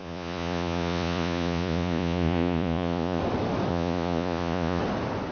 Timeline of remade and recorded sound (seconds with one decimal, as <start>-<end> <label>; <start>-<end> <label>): 0.0-3.2 remade; 3.2-3.7 recorded; 3.7-4.8 remade; 4.8-5.3 recorded